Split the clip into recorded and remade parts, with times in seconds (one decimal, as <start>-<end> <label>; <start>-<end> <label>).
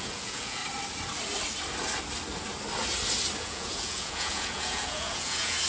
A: 0.0-0.6 remade; 0.6-3.4 recorded; 3.4-5.7 remade